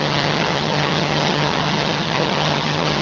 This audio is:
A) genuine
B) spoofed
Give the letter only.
B